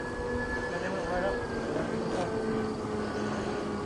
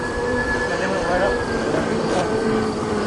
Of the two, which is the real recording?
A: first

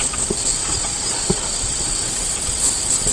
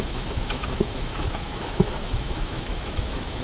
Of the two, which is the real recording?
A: first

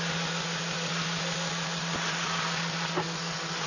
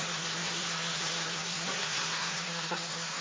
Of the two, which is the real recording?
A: first